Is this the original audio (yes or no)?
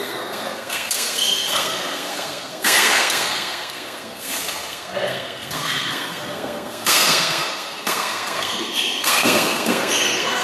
no